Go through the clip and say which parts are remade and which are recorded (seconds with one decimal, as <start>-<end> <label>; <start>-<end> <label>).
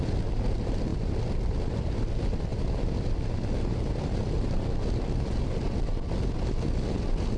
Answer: 0.0-7.4 recorded